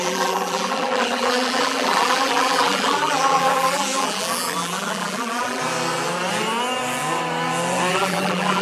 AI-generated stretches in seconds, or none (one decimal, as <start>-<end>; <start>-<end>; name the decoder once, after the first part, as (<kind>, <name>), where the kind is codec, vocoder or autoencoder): 0.0-5.6 (vocoder, BigVGAN v2); 7.9-8.6